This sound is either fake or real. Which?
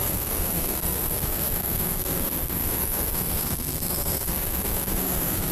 fake